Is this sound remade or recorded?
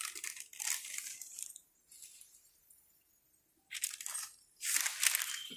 recorded